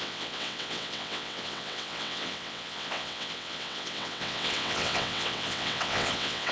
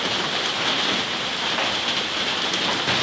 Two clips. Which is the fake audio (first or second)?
first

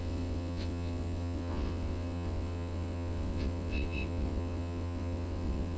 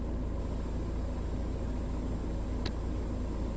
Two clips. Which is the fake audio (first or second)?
first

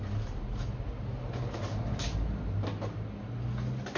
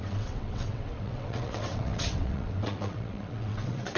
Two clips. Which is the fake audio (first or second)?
second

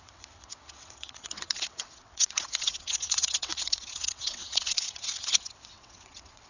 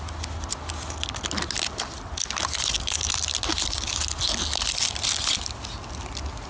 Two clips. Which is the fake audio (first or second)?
first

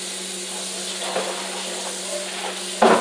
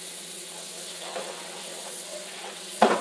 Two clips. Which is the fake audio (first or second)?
second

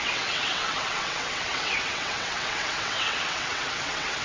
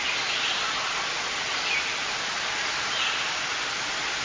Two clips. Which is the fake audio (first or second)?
first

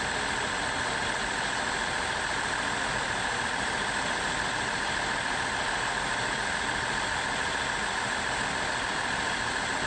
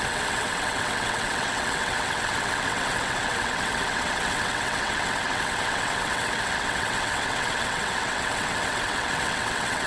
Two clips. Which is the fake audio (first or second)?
second